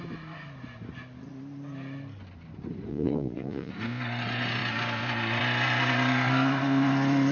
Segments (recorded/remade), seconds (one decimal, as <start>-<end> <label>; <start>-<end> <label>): 0.0-2.9 recorded; 2.9-3.7 remade; 3.7-7.3 recorded